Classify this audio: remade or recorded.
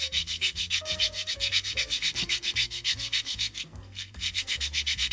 remade